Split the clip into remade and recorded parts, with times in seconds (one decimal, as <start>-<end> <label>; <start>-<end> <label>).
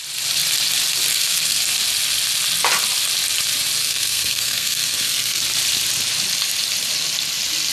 0.0-1.1 recorded; 1.1-1.6 remade; 1.6-3.8 recorded; 3.8-5.4 remade; 5.4-7.7 recorded